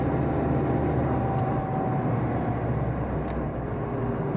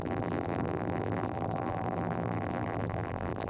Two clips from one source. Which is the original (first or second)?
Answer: first